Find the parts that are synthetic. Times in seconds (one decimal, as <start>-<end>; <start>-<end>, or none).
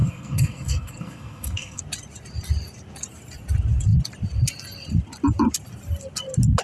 0.0-1.8